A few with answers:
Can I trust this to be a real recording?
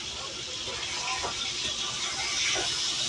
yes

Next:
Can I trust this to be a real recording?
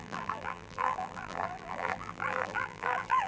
no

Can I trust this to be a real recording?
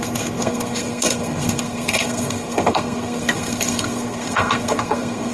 no